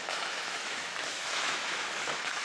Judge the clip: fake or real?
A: fake